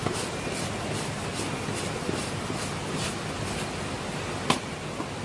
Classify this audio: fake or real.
real